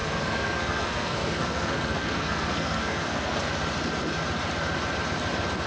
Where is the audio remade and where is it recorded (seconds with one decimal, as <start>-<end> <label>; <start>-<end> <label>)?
0.0-3.4 remade; 3.4-5.7 recorded